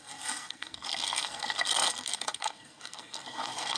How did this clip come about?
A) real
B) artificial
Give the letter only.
B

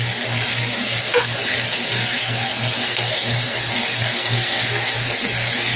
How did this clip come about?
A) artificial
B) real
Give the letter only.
A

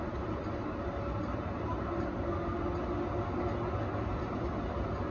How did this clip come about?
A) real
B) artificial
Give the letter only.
A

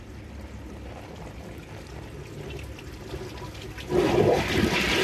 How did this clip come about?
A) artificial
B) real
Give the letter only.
B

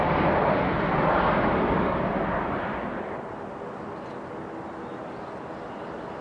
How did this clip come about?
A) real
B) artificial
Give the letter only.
A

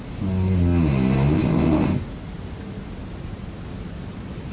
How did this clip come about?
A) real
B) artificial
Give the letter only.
A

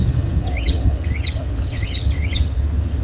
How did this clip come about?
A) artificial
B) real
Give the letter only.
A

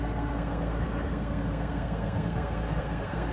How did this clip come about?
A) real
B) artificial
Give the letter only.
B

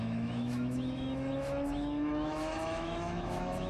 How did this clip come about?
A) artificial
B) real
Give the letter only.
A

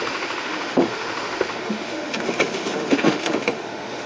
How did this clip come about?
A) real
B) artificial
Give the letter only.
B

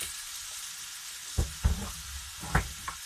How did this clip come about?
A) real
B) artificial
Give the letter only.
A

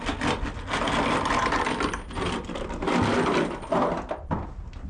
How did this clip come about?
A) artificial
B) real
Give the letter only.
B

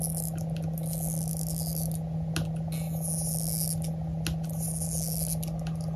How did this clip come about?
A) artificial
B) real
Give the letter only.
B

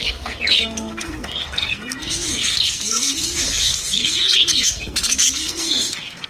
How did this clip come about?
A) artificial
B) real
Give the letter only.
A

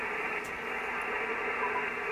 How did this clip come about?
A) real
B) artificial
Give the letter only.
B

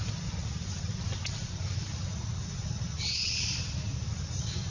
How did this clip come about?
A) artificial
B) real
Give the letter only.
B